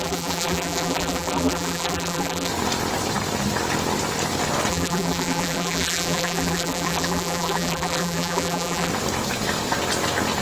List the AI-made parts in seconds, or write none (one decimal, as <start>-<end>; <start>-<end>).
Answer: 0.0-2.5; 4.7-8.9

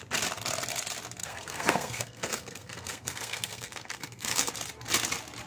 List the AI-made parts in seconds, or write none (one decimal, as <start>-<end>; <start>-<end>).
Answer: 1.2-4.5

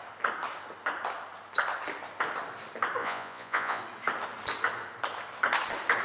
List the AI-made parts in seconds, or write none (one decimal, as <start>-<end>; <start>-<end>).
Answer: 3.0-3.8

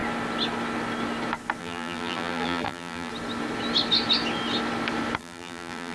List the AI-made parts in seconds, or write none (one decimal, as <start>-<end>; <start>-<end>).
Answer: 1.6-3.1; 5.2-5.9